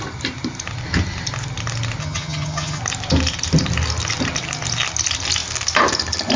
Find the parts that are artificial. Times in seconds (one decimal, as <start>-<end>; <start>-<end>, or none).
2.0-2.8